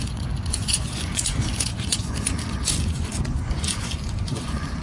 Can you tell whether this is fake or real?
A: fake